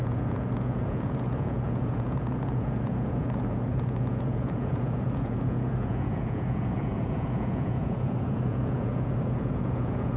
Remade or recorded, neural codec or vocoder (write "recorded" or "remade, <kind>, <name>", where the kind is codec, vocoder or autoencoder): remade, vocoder, Vocos